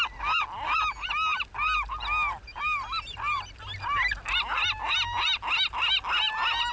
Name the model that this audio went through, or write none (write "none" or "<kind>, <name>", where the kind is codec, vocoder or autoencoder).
none